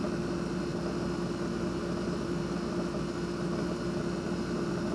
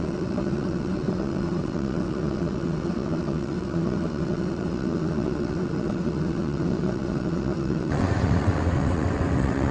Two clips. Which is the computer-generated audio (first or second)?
second